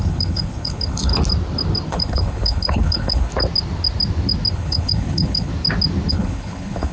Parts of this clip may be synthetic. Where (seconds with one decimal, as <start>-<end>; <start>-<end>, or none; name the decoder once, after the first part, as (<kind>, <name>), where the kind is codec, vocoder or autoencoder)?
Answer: 0.0-1.1 (codec, HILCodec); 1.9-3.3; 4.5-5.5; 6.1-6.9